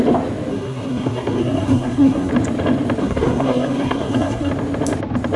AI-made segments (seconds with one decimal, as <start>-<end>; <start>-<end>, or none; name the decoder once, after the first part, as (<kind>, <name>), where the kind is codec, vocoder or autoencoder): 0.5-2.3 (codec, SNAC); 3.0-4.5